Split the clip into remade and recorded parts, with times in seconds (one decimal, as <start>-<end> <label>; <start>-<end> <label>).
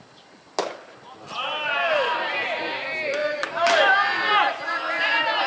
0.0-1.4 recorded; 1.4-2.6 remade; 2.6-3.2 recorded; 3.2-3.9 remade; 3.9-5.5 recorded